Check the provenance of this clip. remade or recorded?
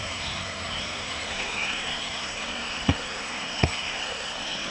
remade